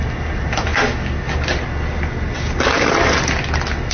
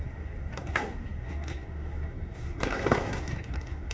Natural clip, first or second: first